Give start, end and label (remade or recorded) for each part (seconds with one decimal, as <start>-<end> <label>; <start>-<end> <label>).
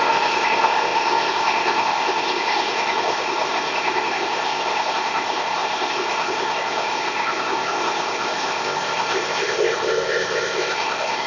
0.0-11.3 remade